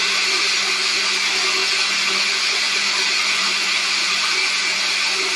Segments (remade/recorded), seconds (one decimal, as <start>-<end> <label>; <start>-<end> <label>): 0.0-1.6 recorded; 1.6-4.8 remade; 4.8-5.4 recorded